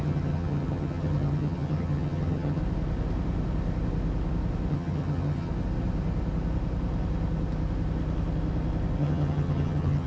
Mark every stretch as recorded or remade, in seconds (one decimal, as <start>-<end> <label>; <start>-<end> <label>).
0.0-2.6 remade; 2.6-4.7 recorded; 4.7-5.5 remade; 5.5-9.0 recorded; 9.0-10.1 remade